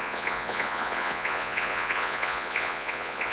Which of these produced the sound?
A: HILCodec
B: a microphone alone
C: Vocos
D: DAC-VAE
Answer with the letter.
C